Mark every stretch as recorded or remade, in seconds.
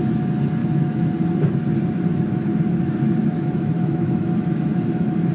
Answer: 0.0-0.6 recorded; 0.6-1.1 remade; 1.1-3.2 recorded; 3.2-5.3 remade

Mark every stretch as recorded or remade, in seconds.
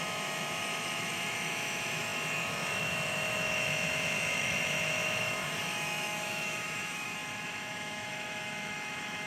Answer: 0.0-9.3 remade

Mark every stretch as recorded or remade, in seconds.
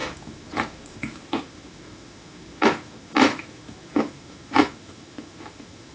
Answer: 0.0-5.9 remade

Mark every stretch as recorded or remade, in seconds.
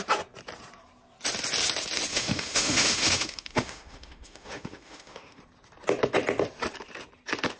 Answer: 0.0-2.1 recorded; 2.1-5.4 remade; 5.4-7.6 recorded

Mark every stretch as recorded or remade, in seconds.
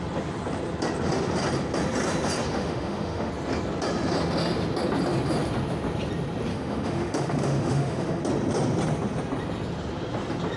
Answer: 0.0-2.5 recorded; 2.5-3.3 remade; 3.3-6.5 recorded; 6.5-8.2 remade; 8.2-10.6 recorded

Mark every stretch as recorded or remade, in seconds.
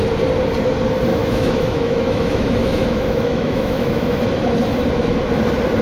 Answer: 0.0-1.1 recorded; 1.1-4.2 remade; 4.2-5.8 recorded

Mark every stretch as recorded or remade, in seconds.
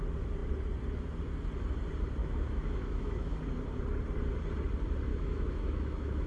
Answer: 0.0-2.2 recorded; 2.2-3.4 remade; 3.4-5.1 recorded; 5.1-6.3 remade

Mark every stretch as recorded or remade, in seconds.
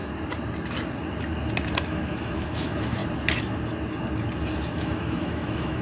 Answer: 0.0-1.8 recorded; 1.8-3.0 remade; 3.0-4.7 recorded; 4.7-5.8 remade